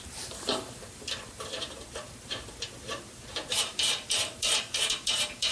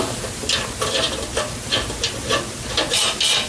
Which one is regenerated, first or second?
first